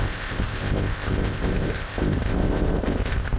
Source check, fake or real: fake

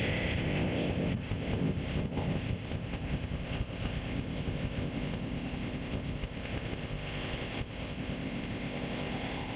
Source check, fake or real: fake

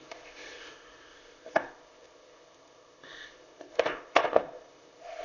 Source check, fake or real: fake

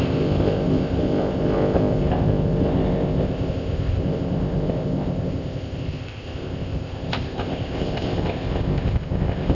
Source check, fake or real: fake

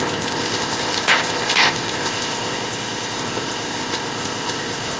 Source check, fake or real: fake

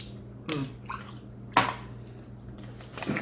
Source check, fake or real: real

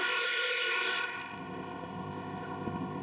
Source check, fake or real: fake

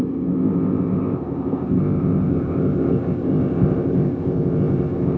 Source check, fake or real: fake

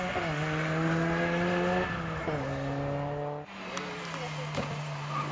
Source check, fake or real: real